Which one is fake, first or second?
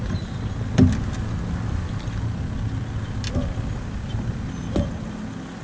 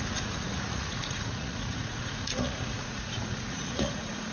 second